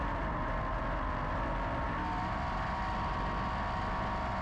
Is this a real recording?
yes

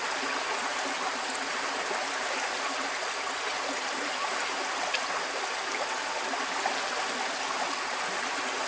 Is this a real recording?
yes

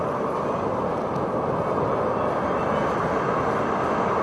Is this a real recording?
yes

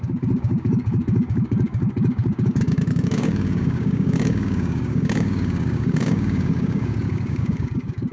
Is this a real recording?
no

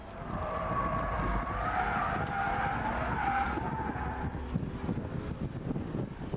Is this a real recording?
yes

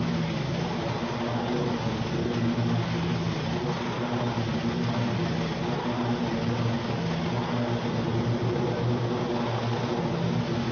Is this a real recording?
yes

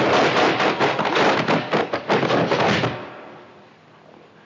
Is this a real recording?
yes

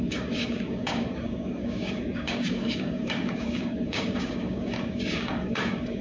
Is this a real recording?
no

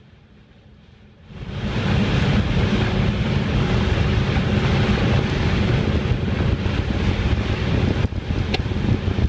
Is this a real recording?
yes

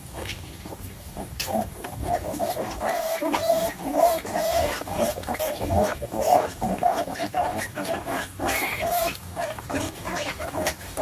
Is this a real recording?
no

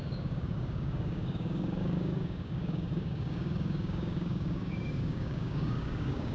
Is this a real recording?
no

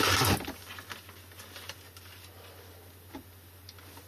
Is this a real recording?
yes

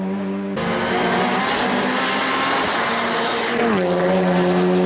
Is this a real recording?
yes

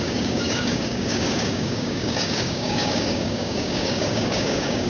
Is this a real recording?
no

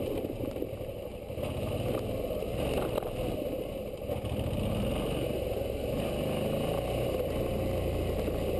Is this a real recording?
yes